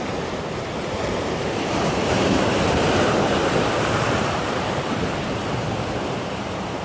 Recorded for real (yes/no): no